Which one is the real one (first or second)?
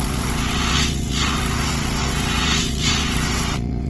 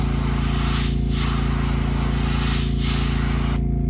second